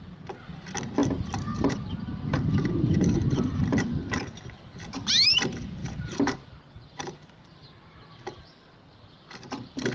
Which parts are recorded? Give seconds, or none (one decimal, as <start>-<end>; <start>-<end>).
0.0-1.0; 3.6-5.8; 8.1-9.9